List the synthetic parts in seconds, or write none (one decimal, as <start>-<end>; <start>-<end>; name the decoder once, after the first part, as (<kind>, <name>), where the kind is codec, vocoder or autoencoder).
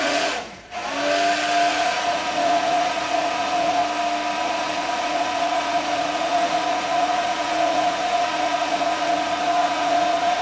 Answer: 0.0-0.8 (vocoder, Vocos); 1.7-3.8; 4.4-10.4